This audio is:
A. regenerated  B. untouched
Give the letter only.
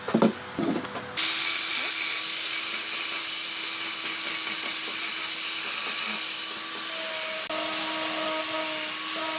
B